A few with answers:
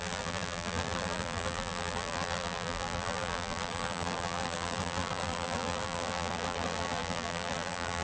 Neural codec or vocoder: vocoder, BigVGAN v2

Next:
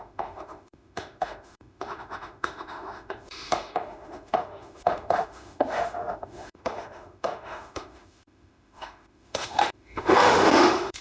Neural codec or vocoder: autoencoder, DAC-VAE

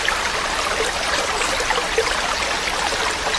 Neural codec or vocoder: none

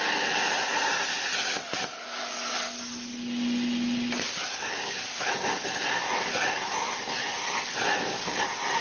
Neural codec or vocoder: none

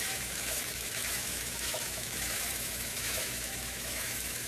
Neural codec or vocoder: autoencoder, DAC-VAE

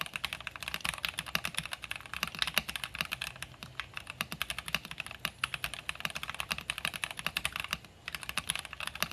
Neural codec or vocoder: none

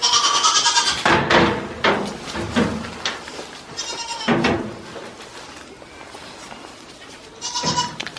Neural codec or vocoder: none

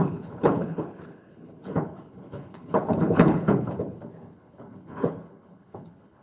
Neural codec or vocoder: codec, HILCodec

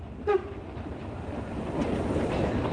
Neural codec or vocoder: none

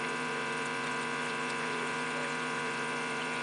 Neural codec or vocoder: vocoder, Vocos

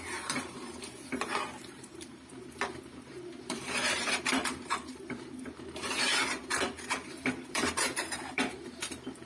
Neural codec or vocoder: vocoder, BigVGAN v2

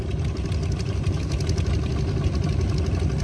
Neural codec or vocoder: none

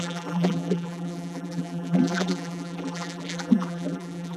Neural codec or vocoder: vocoder, BigVGAN v2